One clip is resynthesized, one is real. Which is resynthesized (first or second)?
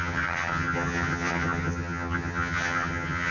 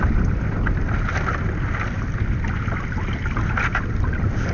first